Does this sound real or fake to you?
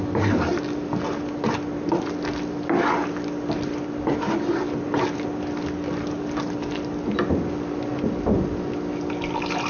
real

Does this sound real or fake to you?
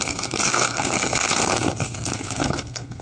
fake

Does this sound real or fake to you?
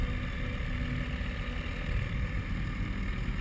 real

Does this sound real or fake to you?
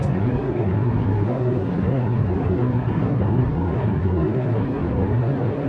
fake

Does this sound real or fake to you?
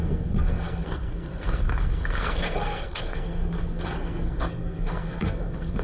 fake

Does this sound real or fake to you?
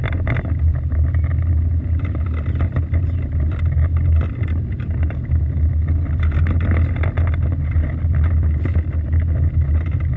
real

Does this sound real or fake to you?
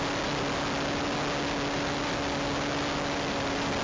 real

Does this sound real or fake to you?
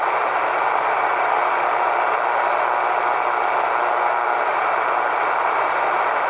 real